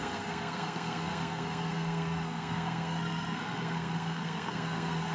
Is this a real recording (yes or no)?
no